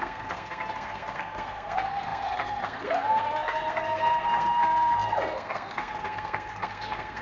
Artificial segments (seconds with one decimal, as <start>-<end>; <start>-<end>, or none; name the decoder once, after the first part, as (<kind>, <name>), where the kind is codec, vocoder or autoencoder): 0.0-7.2 (codec, SNAC)